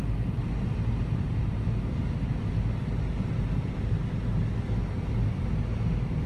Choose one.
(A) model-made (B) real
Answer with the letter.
B